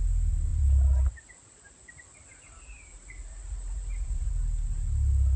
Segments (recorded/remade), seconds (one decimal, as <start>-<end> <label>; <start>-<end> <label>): 0.0-0.5 recorded; 0.5-1.9 remade; 1.9-2.9 recorded; 2.9-4.3 remade; 4.3-5.4 recorded